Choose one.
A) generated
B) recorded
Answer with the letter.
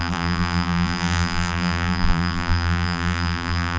A